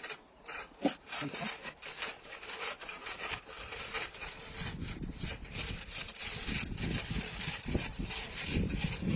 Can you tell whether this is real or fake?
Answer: real